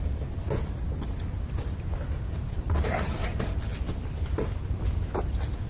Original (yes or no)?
yes